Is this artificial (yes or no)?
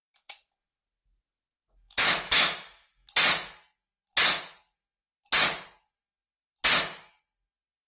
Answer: no